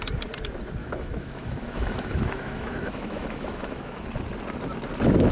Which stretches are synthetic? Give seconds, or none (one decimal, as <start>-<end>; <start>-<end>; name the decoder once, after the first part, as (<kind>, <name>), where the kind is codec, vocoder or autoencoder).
0.8-4.0 (autoencoder, DAC-VAE)